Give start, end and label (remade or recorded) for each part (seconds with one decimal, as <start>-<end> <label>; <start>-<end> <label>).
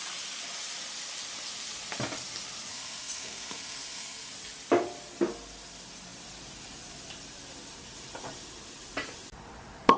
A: 0.0-2.7 recorded; 2.7-4.3 remade; 4.3-10.0 recorded